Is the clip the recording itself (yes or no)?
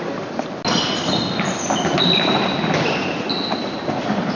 yes